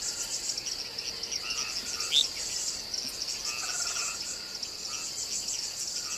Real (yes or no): yes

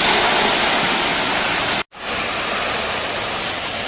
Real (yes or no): yes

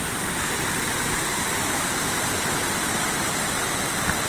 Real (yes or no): yes